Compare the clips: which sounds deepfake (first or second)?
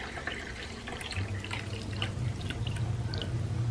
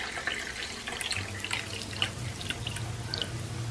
first